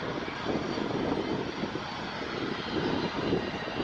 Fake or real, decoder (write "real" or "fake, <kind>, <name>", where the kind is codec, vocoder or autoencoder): real